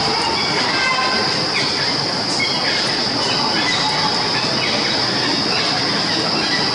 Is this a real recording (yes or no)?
yes